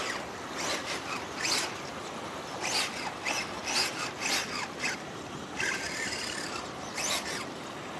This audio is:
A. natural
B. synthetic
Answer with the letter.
A